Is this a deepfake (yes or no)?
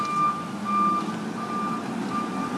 no